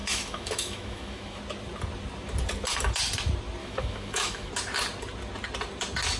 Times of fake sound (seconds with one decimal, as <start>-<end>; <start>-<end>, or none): 0.0-1.4; 3.6-4.5